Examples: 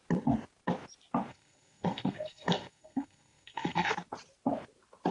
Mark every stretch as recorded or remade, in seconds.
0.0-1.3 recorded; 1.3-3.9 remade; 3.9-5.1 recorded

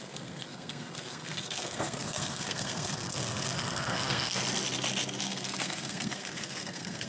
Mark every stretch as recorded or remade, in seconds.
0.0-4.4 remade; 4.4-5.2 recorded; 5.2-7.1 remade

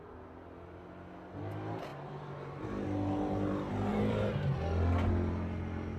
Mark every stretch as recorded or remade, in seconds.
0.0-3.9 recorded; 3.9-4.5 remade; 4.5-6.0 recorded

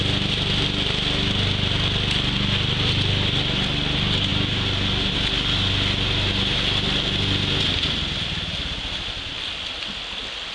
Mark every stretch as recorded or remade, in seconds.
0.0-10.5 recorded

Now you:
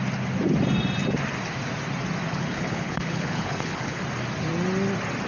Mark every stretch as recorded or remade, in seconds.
0.0-2.3 recorded; 2.3-4.0 remade; 4.0-5.3 recorded

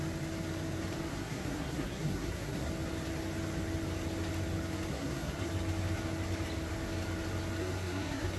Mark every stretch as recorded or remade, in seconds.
0.0-1.1 recorded; 1.1-2.7 remade; 2.7-4.9 recorded; 4.9-5.5 remade; 5.5-7.6 recorded; 7.6-8.4 remade

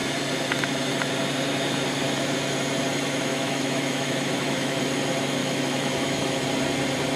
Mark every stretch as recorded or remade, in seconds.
0.0-3.3 recorded; 3.3-4.8 remade; 4.8-5.4 recorded; 5.4-6.4 remade; 6.4-7.2 recorded

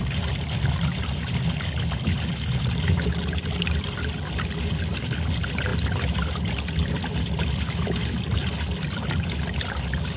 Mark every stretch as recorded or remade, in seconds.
0.0-10.2 recorded